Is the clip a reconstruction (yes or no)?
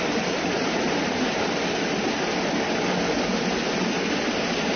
no